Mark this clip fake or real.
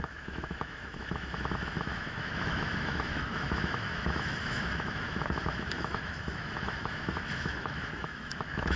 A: fake